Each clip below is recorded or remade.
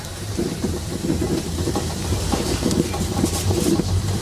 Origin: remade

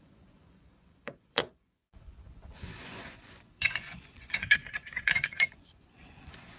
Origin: remade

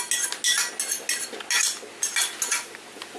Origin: recorded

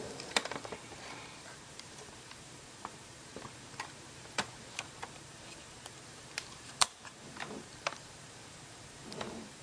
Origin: remade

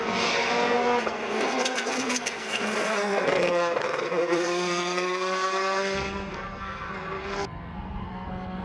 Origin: remade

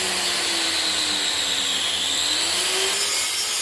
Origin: recorded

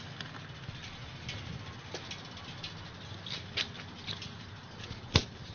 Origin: recorded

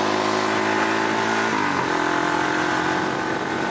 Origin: recorded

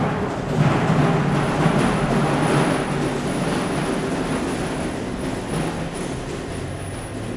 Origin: recorded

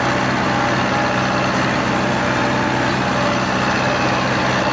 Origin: recorded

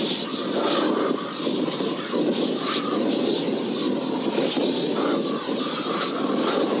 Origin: recorded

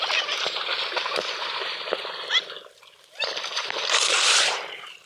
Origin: remade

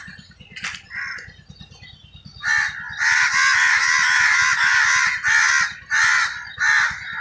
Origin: recorded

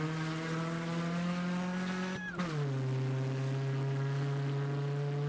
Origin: recorded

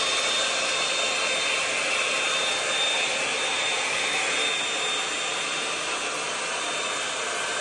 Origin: recorded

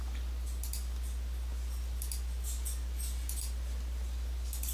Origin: recorded